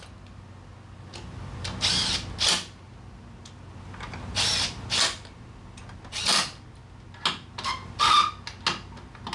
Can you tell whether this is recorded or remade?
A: recorded